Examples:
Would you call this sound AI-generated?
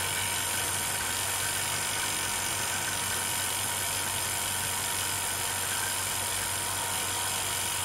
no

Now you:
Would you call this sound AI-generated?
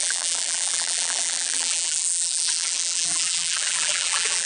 yes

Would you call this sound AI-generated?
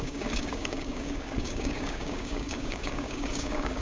yes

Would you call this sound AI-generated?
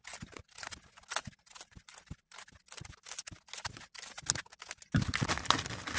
no